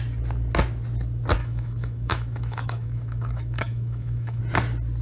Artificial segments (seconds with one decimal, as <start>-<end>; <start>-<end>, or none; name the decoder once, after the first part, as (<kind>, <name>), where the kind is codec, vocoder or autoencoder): 1.4-4.4 (autoencoder, DAC-VAE)